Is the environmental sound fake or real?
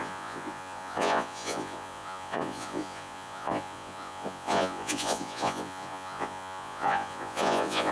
fake